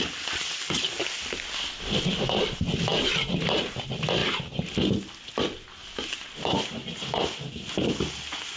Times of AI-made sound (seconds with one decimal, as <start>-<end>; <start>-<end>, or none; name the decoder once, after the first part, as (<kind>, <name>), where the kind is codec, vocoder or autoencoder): none